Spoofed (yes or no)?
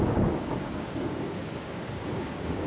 yes